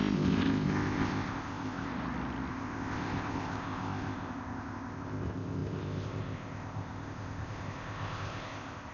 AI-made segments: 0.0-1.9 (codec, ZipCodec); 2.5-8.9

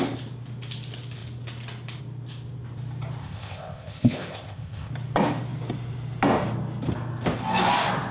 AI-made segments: 3.2-4.9 (codec, ZipCodec)

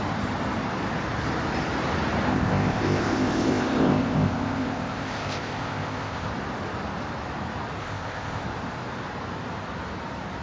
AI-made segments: 2.3-6.3 (codec, ZipCodec); 7.8-8.4